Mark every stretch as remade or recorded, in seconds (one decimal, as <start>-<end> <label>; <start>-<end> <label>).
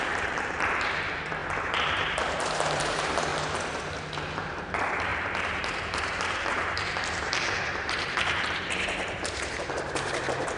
0.0-3.3 remade; 3.3-4.3 recorded; 4.3-10.6 remade